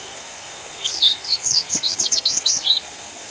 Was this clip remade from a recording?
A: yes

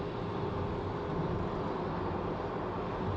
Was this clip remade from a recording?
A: no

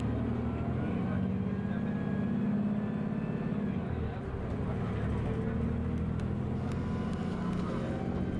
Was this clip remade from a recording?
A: no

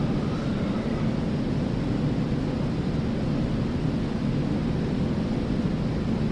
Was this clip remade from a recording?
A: no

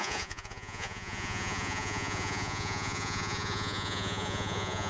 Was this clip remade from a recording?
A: yes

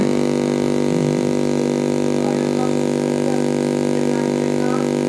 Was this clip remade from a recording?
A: no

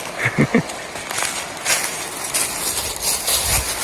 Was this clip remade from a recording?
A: no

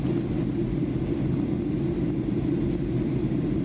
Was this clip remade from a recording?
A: no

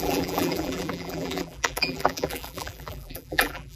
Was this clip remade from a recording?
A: yes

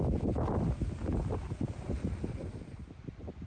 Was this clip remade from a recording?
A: no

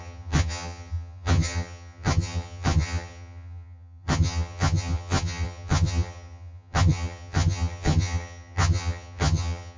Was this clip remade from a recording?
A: yes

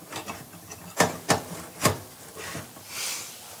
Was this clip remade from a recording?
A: no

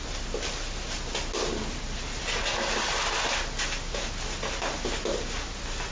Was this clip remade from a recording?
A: no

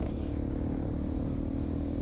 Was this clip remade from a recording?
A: yes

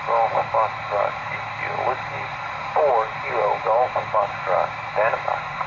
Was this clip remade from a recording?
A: no